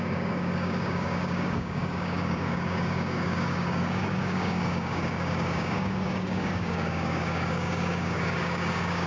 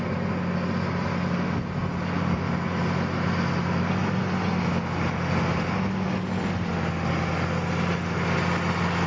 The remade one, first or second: first